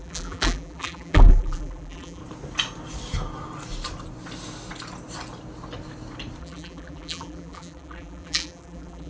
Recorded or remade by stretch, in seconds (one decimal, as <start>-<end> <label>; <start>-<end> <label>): 0.0-2.2 remade; 2.2-6.4 recorded; 6.4-9.1 remade